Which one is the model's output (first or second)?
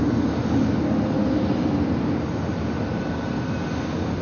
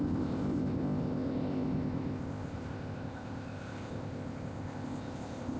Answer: second